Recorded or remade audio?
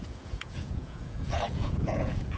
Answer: remade